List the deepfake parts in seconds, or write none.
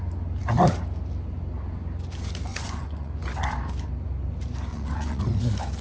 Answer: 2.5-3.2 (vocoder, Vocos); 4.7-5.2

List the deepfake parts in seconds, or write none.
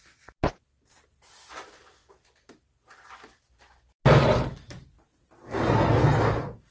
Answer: none